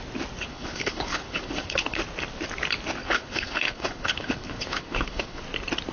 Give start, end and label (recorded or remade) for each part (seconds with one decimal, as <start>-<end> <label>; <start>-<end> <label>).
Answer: 0.0-0.5 recorded; 0.5-2.0 remade; 2.0-3.0 recorded; 3.0-5.4 remade; 5.4-5.9 recorded